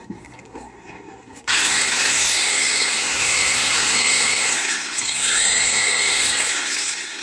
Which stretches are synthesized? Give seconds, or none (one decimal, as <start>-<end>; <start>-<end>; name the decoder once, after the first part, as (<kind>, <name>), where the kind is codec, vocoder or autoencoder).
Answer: 0.0-7.2 (codec, SNAC)